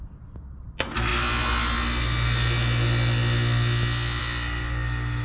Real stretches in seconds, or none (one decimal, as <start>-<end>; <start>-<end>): 0.0-5.2